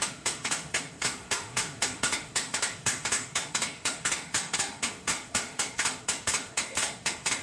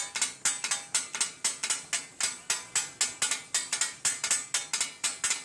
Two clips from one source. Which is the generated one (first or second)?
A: first